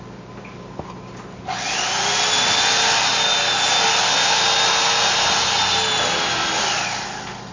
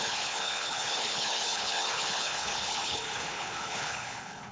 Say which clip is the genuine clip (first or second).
first